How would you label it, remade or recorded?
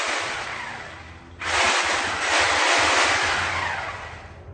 recorded